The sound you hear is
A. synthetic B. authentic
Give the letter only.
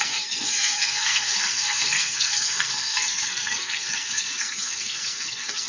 A